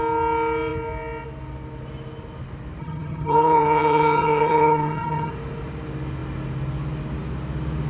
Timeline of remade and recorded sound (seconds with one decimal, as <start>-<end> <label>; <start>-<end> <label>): 0.0-2.8 recorded; 2.8-5.3 remade; 5.3-7.9 recorded